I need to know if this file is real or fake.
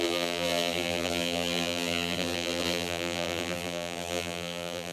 fake